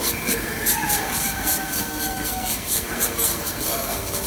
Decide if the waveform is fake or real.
fake